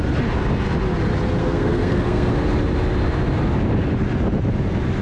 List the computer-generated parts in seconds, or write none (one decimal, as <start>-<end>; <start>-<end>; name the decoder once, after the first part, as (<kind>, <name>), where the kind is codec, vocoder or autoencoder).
1.4-2.3 (codec, SNAC)